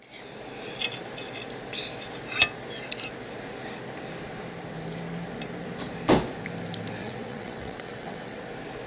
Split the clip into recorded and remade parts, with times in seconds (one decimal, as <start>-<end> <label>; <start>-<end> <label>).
0.0-7.0 recorded; 7.0-8.4 remade; 8.4-8.9 recorded